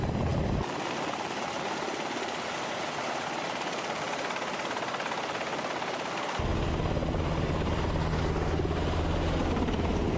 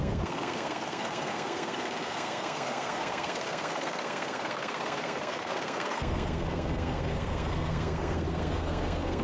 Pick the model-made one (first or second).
second